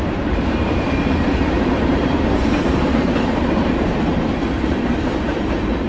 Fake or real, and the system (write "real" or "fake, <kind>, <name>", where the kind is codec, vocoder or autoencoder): fake, vocoder, BigVGAN v2